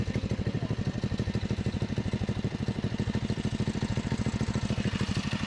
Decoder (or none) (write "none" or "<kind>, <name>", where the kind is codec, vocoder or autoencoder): none